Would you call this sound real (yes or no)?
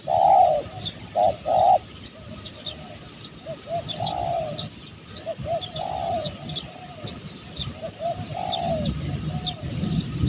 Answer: yes